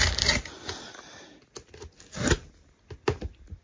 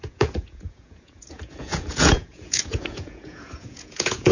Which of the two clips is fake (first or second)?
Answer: second